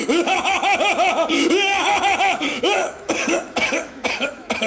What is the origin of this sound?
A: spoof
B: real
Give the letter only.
A